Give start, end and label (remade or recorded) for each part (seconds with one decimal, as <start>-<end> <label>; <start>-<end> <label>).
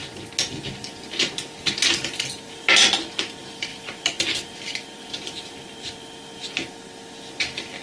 0.0-1.7 remade; 1.7-3.7 recorded; 3.7-6.2 remade; 6.2-7.8 recorded